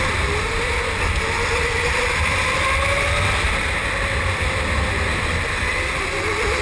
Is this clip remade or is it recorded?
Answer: recorded